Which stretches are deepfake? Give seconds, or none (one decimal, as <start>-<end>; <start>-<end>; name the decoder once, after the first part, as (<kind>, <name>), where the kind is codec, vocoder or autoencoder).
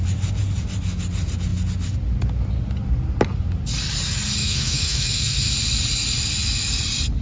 4.4-5.5 (autoencoder, DAC-VAE)